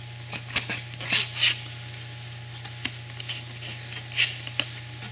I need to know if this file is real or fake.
real